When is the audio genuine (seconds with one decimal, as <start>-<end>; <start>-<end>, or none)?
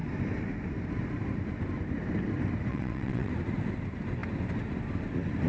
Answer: 0.0-2.7; 3.3-5.5